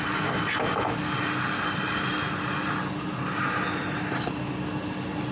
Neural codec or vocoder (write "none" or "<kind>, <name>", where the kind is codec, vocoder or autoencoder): none